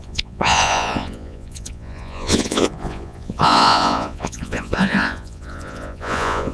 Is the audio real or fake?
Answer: fake